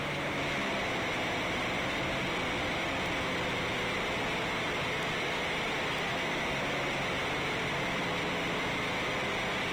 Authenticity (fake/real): real